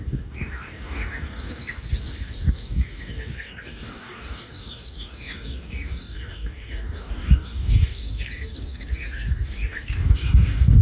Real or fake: fake